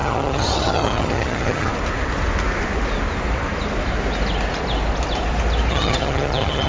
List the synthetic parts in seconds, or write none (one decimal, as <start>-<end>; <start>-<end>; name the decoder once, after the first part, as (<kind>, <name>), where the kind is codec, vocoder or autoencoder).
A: 0.0-1.7 (vocoder, HiFi-GAN); 5.7-6.7